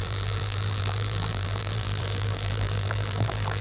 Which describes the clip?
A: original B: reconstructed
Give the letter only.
B